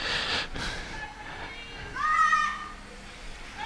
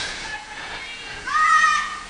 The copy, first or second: second